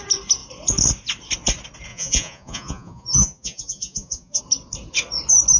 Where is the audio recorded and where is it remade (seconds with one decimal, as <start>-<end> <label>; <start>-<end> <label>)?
0.0-1.9 recorded; 1.9-4.4 remade; 4.4-5.6 recorded